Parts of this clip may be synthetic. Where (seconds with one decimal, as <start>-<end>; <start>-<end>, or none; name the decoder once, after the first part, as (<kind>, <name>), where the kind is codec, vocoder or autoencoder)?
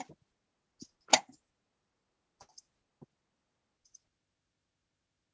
none